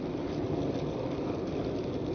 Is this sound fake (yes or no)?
no